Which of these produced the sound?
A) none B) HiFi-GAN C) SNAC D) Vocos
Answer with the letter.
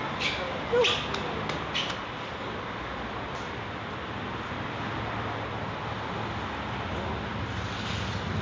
A